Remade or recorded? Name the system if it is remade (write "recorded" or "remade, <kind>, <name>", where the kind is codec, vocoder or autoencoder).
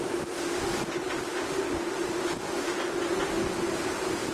recorded